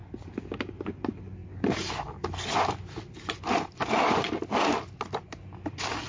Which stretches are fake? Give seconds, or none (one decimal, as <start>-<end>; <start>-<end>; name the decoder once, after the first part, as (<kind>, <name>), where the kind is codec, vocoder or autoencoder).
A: none